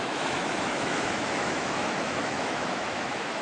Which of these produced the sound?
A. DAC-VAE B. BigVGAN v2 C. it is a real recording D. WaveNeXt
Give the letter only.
A